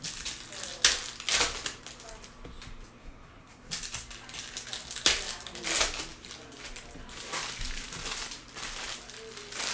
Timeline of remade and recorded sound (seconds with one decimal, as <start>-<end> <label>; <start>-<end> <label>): 0.0-3.0 recorded; 3.0-3.7 remade; 3.7-9.7 recorded